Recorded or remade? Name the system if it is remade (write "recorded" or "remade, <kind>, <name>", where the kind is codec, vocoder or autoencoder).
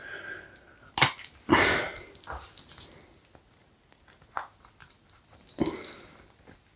recorded